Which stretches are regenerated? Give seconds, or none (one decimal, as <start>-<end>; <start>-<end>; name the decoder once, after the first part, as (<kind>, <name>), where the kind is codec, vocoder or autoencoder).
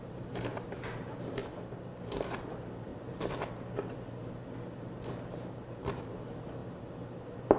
0.0-1.4 (vocoder, BigVGAN v2); 2.0-2.9; 5.1-6.6